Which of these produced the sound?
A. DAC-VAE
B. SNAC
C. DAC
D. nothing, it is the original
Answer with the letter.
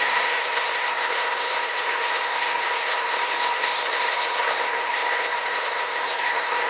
B